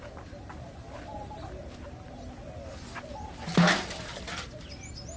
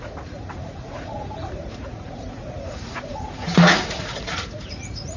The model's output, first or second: second